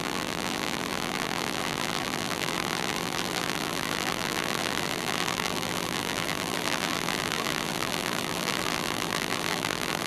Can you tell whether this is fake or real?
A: fake